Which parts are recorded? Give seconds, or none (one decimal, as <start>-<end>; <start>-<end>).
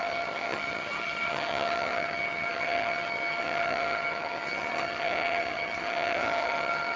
none